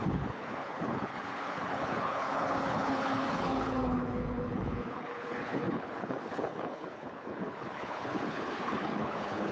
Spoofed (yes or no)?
yes